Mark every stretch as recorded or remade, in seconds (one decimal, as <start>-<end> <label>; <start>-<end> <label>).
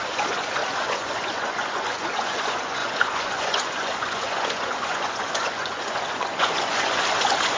0.0-7.6 remade